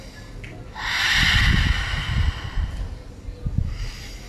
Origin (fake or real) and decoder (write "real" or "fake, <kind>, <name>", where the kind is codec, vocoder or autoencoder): real